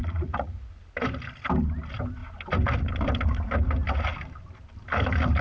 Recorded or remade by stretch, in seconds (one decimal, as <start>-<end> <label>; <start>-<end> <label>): 0.0-0.7 remade; 0.7-5.4 recorded

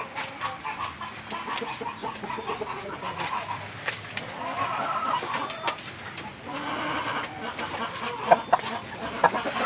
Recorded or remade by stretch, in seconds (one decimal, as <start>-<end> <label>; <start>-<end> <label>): 0.0-2.0 recorded; 2.0-2.9 remade; 2.9-9.7 recorded

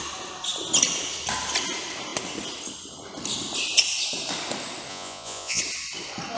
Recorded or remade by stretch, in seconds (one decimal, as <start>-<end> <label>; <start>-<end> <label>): 0.0-4.9 recorded; 4.9-5.6 remade; 5.6-6.4 recorded

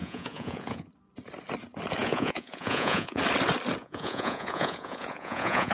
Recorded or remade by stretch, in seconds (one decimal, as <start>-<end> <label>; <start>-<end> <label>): 0.0-0.9 remade; 0.9-2.0 recorded; 2.0-3.2 remade; 3.2-3.8 recorded; 3.8-5.7 remade

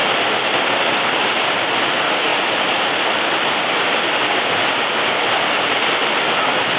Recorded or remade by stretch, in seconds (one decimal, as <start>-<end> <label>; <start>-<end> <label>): 0.0-6.8 recorded

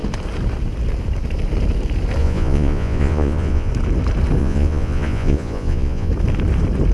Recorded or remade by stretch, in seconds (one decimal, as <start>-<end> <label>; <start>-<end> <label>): 0.0-2.2 recorded; 2.2-3.7 remade; 3.7-4.4 recorded; 4.4-6.1 remade; 6.1-6.9 recorded